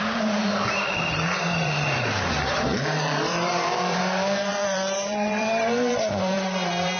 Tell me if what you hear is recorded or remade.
remade